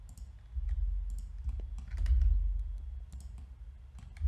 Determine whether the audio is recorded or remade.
recorded